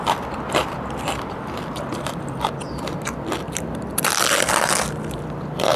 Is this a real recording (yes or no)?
no